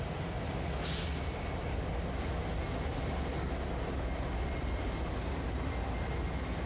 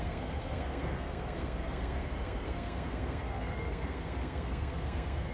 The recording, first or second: first